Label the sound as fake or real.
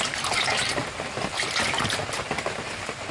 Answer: real